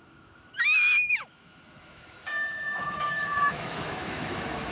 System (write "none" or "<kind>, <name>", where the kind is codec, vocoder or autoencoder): autoencoder, DAC-VAE